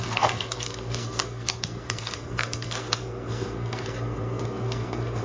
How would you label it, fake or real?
fake